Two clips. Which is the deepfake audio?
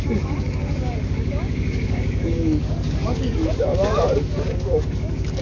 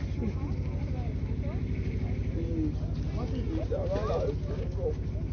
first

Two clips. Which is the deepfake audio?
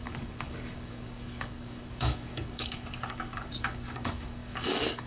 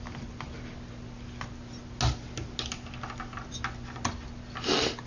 first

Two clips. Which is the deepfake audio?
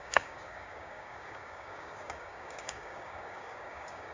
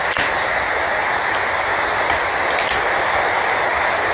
first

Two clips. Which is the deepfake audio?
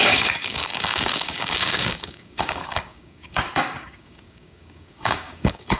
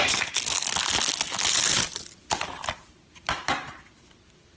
first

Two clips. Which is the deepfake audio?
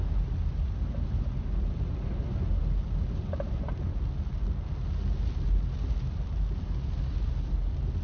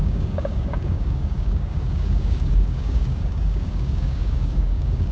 second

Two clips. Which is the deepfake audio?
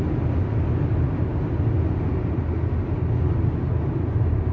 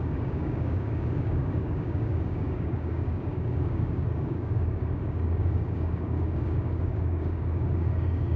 second